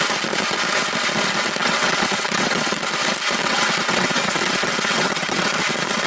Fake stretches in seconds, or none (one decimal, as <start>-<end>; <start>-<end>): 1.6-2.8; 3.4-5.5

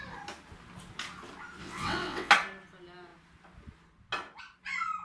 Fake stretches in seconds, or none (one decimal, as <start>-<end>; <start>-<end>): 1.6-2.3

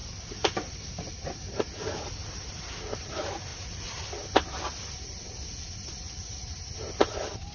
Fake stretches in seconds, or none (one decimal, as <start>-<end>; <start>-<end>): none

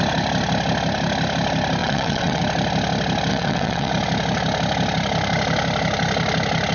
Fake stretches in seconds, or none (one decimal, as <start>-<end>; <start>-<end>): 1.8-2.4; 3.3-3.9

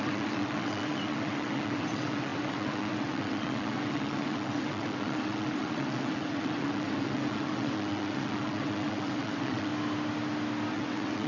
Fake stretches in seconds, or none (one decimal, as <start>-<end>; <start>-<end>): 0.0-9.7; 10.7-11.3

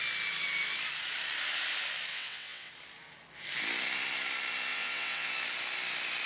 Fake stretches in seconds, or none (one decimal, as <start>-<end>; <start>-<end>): 2.1-2.7; 4.7-5.3

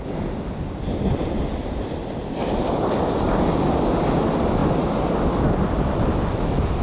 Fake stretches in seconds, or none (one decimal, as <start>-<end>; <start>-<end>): none

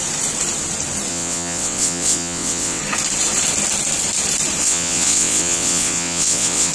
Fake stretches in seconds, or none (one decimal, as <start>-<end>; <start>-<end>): 1.1-2.8; 4.6-6.7